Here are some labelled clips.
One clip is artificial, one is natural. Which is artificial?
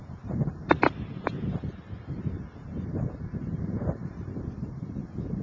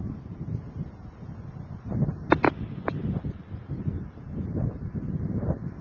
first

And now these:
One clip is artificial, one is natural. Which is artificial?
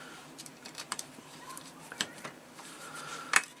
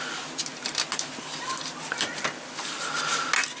first